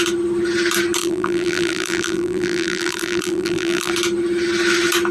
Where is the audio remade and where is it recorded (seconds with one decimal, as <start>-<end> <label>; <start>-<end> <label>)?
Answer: 0.0-1.0 recorded; 1.0-3.9 remade; 3.9-5.1 recorded